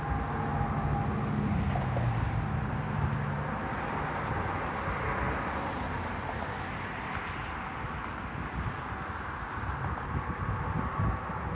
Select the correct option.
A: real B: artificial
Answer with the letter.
A